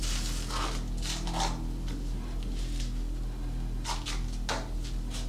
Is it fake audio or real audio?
real